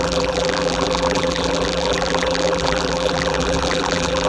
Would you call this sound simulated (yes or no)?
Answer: yes